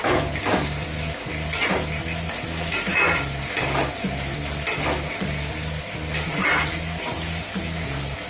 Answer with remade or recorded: recorded